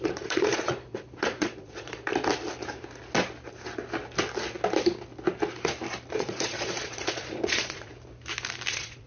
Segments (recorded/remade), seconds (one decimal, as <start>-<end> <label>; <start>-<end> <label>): 0.0-2.1 remade; 2.1-6.1 recorded; 6.1-7.9 remade; 7.9-8.7 recorded; 8.7-9.1 remade